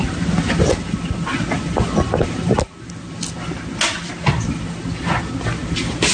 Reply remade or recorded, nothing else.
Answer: recorded